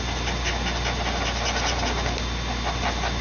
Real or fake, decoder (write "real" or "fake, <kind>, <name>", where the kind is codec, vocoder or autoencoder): real